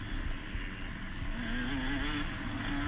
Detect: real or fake real